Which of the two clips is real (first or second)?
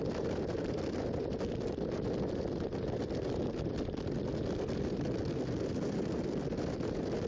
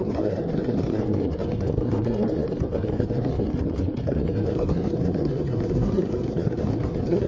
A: first